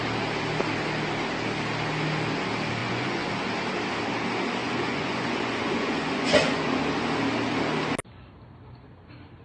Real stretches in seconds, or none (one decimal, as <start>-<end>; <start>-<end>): 0.0-2.8; 3.3-4.6; 6.8-9.4